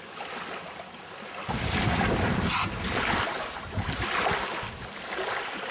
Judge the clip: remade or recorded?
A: recorded